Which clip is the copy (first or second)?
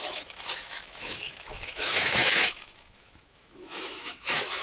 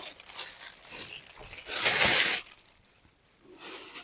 first